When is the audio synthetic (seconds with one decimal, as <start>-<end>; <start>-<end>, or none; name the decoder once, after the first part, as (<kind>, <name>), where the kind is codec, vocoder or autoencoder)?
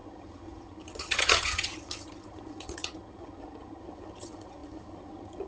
0.0-5.5 (vocoder, HiFi-GAN)